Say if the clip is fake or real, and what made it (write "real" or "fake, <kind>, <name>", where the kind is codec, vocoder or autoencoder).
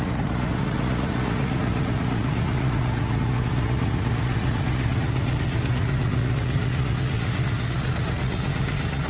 fake, vocoder, Vocos